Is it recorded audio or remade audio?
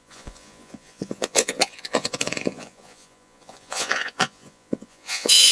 remade